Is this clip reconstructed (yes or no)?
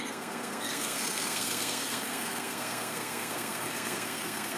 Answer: yes